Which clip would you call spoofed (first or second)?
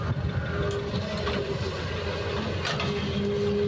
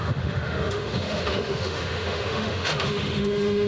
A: second